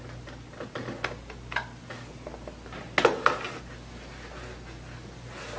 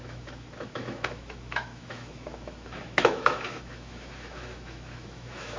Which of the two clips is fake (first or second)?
second